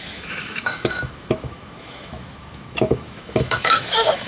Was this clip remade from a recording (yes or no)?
yes